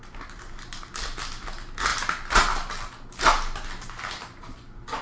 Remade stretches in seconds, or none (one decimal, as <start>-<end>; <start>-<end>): none